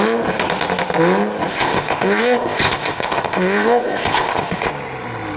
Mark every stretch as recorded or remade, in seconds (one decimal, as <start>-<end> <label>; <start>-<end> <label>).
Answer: 0.0-1.5 recorded; 1.5-4.7 remade; 4.7-5.4 recorded